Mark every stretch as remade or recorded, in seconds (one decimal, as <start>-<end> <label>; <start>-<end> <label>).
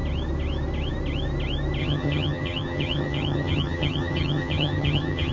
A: 0.0-1.8 recorded; 1.8-5.3 remade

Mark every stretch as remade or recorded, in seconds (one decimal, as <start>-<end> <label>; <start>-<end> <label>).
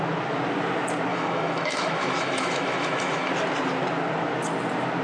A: 0.0-1.1 recorded; 1.1-3.3 remade; 3.3-5.0 recorded